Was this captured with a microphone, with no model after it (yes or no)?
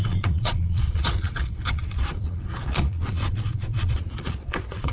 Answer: no